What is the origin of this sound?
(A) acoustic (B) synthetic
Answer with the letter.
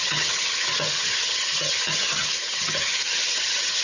B